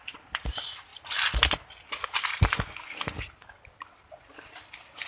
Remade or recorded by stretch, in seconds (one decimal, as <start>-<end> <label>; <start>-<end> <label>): 0.0-5.1 recorded